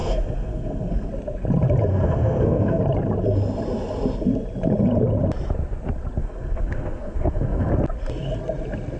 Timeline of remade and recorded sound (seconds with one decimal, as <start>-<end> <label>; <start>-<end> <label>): 0.0-1.1 remade; 1.1-1.9 recorded; 1.9-2.8 remade; 2.8-6.2 recorded; 6.2-7.7 remade; 7.7-9.0 recorded